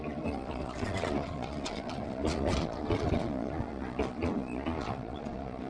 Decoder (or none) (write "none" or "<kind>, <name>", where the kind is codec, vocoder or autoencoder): vocoder, Vocos